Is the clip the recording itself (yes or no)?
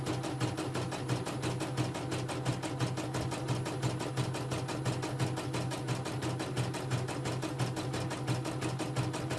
yes